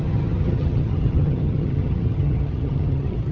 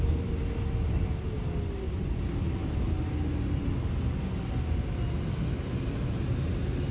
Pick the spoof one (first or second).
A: first